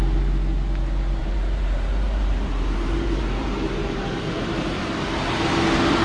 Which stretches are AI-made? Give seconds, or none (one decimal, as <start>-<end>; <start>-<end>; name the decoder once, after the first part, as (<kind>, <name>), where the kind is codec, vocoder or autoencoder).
1.2-4.8 (vocoder, BigVGAN v2)